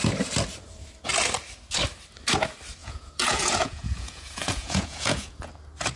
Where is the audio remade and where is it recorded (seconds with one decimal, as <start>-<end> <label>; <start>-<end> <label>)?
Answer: 0.0-2.8 recorded; 2.8-5.5 remade; 5.5-6.0 recorded